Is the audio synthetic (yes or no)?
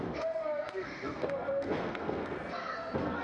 yes